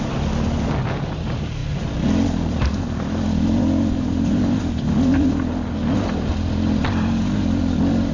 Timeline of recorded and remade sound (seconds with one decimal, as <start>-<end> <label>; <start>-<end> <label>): 0.0-8.1 recorded